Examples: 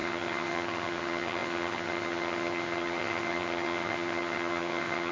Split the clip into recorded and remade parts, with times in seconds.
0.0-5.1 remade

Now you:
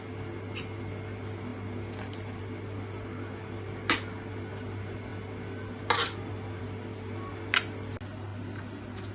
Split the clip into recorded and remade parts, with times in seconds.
0.0-9.1 recorded

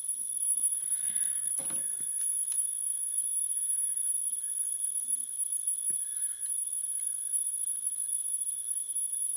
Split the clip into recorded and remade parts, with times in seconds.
0.0-1.0 recorded; 1.0-1.6 remade; 1.6-9.4 recorded

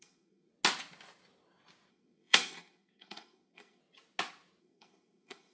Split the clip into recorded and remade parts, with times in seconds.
0.0-0.5 remade; 0.5-1.9 recorded; 1.9-3.8 remade; 3.8-4.6 recorded; 4.6-5.5 remade

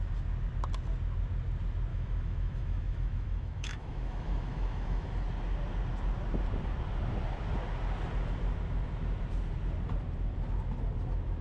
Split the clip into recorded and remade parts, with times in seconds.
0.0-1.9 recorded; 1.9-5.1 remade; 5.1-11.4 recorded